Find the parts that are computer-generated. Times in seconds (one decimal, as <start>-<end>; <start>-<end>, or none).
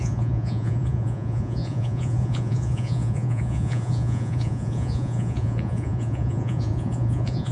0.0-7.5